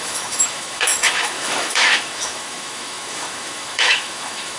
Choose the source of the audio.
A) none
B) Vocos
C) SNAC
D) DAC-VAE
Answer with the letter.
D